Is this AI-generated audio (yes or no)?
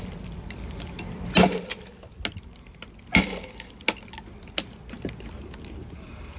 no